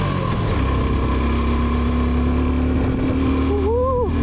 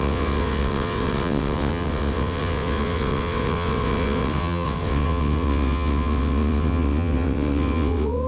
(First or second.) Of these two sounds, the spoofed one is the second